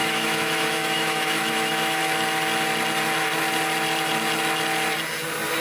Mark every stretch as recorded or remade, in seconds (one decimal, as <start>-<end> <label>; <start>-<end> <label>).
0.0-2.0 remade; 2.0-5.6 recorded